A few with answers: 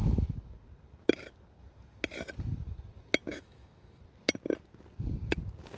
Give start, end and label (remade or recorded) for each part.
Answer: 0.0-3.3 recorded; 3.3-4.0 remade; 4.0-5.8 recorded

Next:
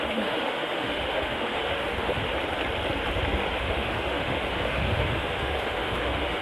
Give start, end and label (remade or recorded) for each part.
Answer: 0.0-2.2 remade; 2.2-3.6 recorded; 3.6-6.4 remade